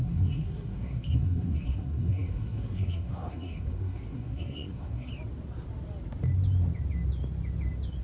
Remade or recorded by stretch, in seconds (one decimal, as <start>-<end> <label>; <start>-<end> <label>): 0.0-5.1 remade; 5.1-8.0 recorded